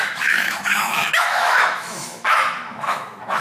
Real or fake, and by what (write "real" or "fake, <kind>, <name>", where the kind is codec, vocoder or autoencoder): fake, autoencoder, DAC-VAE